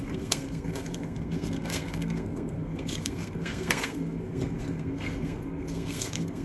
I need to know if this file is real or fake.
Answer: fake